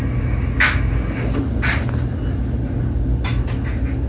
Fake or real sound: real